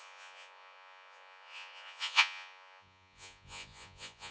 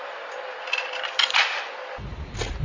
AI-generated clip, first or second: first